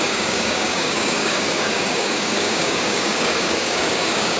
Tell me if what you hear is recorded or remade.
remade